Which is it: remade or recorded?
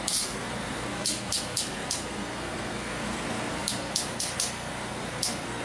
remade